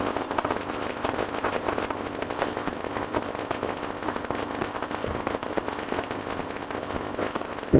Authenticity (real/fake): fake